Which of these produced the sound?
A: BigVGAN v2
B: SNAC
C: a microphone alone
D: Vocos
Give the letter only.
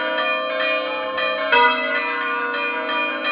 C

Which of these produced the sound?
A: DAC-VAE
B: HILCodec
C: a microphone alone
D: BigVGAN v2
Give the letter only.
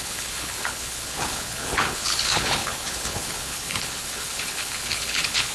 B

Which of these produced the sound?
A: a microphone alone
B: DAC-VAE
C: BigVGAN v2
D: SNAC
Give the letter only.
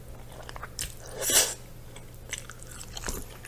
A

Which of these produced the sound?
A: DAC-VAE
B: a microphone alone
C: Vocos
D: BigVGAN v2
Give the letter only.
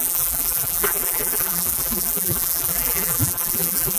D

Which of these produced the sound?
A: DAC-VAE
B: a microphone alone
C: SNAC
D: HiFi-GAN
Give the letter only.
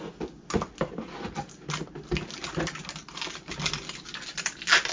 B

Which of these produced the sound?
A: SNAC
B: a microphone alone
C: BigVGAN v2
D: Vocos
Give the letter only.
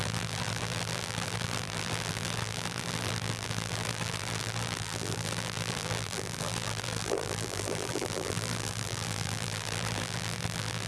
C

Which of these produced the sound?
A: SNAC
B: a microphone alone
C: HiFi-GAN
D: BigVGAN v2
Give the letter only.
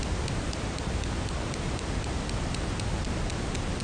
D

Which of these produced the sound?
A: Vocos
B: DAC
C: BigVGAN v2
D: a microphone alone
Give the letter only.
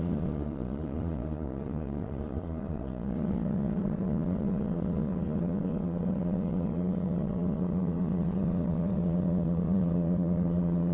A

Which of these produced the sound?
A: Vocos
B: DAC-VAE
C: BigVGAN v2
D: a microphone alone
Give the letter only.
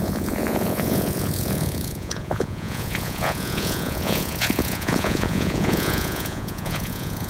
A